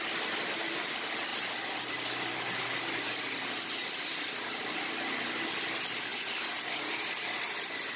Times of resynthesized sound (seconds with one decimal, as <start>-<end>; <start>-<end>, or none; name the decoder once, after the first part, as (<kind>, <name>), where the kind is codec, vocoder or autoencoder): none